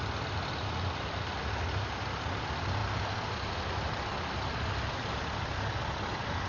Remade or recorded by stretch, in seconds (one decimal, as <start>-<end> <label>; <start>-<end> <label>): 0.0-6.5 recorded